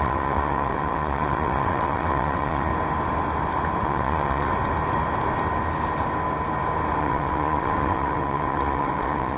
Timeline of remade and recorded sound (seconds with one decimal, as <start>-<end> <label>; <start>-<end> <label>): 0.0-2.7 remade; 2.7-3.8 recorded; 3.8-4.5 remade; 4.5-7.0 recorded; 7.0-9.4 remade